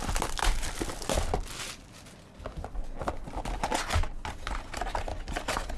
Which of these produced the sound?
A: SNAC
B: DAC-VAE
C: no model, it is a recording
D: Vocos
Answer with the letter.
C